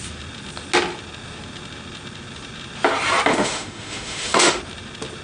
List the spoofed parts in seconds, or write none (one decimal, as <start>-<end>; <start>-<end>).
3.3-4.6